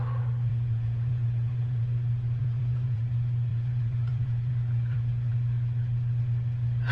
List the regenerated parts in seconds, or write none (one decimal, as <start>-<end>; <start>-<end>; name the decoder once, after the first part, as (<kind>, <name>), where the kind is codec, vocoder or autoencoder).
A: 0.5-1.8 (vocoder, Vocos); 2.4-3.0; 3.5-5.3